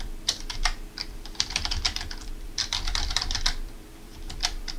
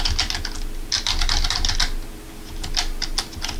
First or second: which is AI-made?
first